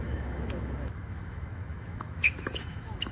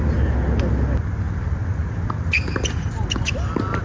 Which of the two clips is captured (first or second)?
second